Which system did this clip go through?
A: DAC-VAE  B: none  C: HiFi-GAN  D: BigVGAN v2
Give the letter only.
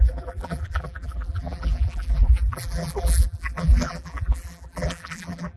D